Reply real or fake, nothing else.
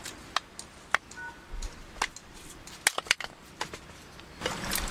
real